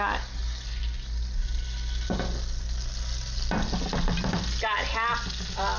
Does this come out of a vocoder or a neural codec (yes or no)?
no